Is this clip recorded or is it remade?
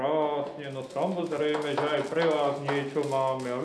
recorded